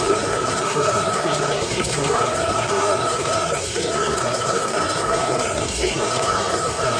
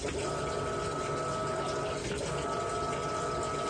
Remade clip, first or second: first